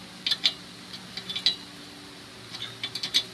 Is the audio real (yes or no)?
yes